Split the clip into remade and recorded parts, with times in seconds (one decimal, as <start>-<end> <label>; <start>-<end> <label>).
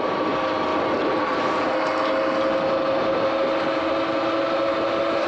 0.0-5.3 recorded